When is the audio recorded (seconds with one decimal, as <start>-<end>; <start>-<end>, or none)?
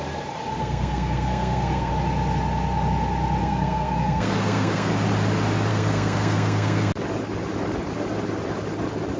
0.0-0.6; 1.9-3.4; 4.9-5.7; 6.9-9.2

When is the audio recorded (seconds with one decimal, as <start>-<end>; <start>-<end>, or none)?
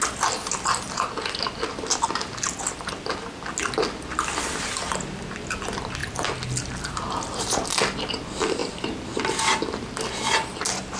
0.0-11.0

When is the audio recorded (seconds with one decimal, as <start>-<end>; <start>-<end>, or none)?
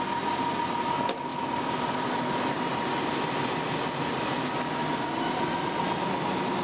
0.0-6.6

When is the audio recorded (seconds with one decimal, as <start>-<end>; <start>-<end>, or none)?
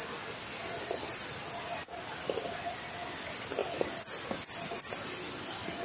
0.0-5.8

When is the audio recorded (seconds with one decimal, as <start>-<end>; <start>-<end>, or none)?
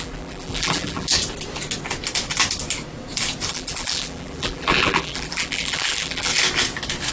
1.1-3.5; 6.3-7.1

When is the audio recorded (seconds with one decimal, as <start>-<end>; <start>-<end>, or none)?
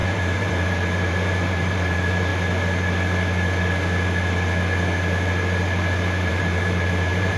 2.3-6.3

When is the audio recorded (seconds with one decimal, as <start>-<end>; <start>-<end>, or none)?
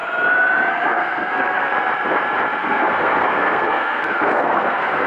0.0-0.7; 1.7-2.6